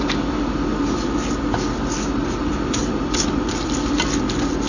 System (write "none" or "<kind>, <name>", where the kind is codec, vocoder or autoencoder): none